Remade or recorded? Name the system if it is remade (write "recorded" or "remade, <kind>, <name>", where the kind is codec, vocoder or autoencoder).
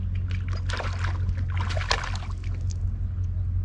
recorded